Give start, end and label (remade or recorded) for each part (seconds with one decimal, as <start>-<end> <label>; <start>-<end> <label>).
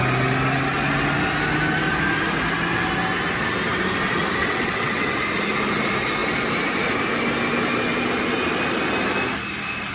0.0-4.4 recorded; 4.4-5.1 remade; 5.1-9.9 recorded